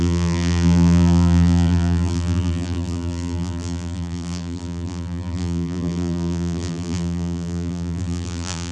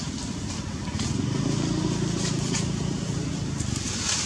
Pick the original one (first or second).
second